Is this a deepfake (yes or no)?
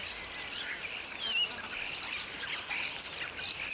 no